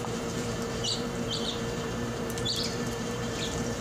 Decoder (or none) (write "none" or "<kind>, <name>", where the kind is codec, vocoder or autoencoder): vocoder, BigVGAN v2